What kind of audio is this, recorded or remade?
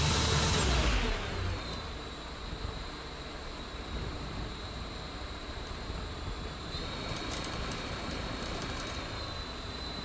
remade